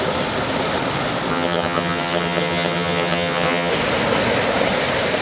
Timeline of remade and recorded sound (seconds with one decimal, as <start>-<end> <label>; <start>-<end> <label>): 0.0-1.3 recorded; 1.3-3.7 remade; 3.7-5.2 recorded